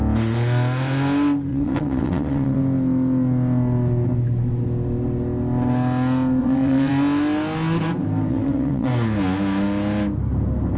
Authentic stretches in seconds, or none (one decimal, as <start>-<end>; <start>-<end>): 0.0-1.5; 2.6-6.4; 6.9-8.3; 8.9-10.8